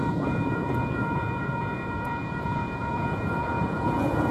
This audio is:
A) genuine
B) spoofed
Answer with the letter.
B